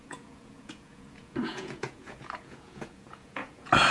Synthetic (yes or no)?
yes